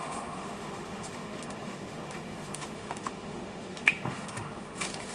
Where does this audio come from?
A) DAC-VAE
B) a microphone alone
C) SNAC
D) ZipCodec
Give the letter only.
A